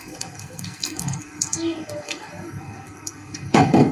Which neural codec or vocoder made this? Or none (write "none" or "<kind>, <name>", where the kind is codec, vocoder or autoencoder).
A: codec, SNAC